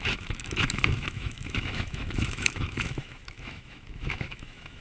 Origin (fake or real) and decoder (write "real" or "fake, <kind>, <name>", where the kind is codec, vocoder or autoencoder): fake, autoencoder, DAC-VAE